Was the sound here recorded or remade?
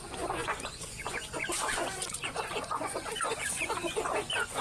remade